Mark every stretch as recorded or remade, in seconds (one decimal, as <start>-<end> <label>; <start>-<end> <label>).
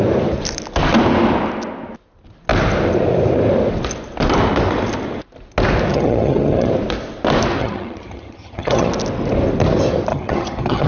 0.0-5.9 recorded; 5.9-6.7 remade; 6.7-7.6 recorded; 7.6-8.9 remade; 8.9-10.1 recorded; 10.1-10.9 remade